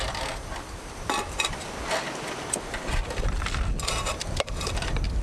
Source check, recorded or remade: recorded